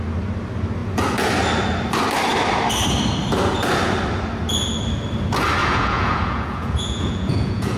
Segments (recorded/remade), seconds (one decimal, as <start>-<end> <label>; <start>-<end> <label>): 0.0-5.6 recorded; 5.6-7.8 remade